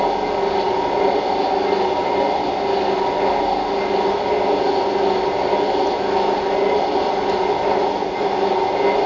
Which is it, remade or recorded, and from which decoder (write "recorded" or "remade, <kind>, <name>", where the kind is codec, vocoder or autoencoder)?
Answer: recorded